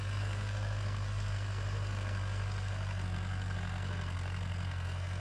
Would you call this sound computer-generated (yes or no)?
yes